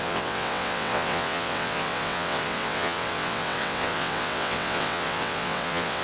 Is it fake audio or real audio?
fake